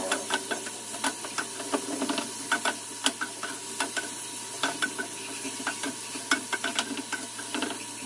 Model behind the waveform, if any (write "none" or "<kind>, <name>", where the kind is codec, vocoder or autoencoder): none